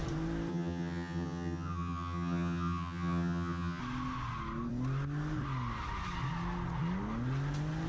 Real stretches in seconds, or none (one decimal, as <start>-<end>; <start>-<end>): 0.0-0.5; 3.8-7.9